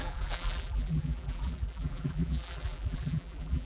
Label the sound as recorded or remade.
remade